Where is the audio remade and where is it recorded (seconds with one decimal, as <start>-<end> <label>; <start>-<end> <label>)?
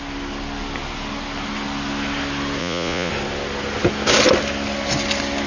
0.0-2.6 recorded; 2.6-3.1 remade; 3.1-5.5 recorded